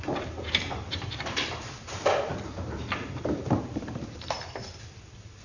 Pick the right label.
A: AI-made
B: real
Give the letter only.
A